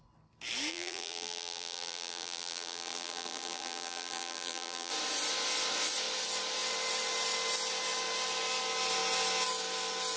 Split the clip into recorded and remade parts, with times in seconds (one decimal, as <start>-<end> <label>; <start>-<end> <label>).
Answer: 0.0-0.7 recorded; 0.7-4.9 remade; 4.9-10.2 recorded

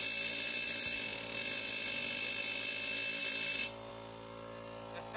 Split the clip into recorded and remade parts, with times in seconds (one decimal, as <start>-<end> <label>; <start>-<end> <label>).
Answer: 0.0-3.2 recorded; 3.2-3.9 remade; 3.9-5.2 recorded

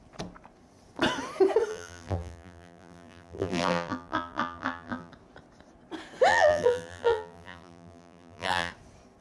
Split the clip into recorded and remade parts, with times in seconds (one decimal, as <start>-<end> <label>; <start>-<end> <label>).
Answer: 0.0-1.7 recorded; 1.7-5.1 remade; 5.1-6.3 recorded; 6.3-8.7 remade; 8.7-9.2 recorded

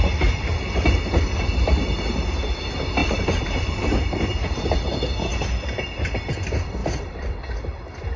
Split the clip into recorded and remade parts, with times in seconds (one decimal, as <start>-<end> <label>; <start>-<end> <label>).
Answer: 0.0-3.0 recorded; 3.0-4.3 remade; 4.3-5.3 recorded; 5.3-5.9 remade; 5.9-6.8 recorded; 6.8-7.3 remade; 7.3-8.2 recorded